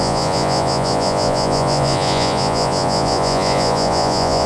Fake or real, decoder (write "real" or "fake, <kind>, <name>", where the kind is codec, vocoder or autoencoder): fake, vocoder, Vocos